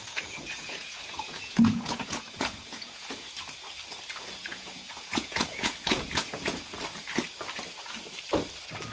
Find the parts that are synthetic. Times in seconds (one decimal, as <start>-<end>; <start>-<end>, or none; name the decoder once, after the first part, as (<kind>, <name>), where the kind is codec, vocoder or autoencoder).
0.0-3.3 (vocoder, Vocos); 4.4-6.8